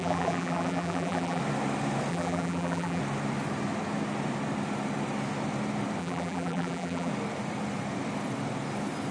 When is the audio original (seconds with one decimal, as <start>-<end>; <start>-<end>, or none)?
1.4-2.1; 3.0-6.0; 7.1-9.1